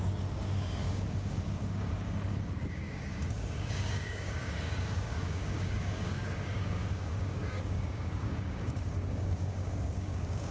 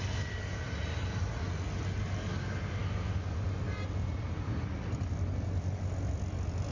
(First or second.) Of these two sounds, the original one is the second